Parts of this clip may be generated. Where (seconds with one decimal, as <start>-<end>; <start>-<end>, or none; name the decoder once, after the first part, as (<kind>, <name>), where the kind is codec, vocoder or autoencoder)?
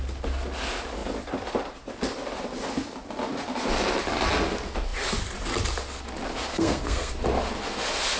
6.5-7.1 (codec, SNAC)